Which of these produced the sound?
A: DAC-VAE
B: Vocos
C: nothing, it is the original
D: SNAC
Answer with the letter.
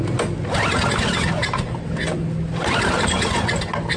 C